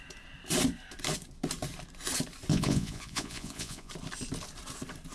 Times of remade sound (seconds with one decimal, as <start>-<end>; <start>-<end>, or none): 2.5-3.9